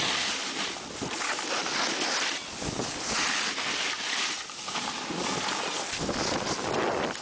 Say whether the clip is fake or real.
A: real